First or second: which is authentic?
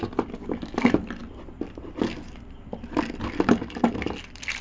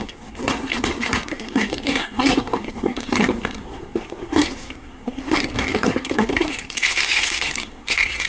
first